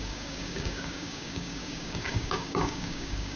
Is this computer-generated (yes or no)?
yes